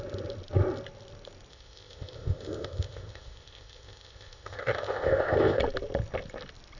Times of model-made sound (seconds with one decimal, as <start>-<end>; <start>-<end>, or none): 1.5-5.6